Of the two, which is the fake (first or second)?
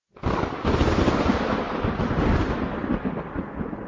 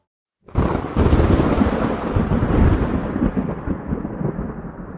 second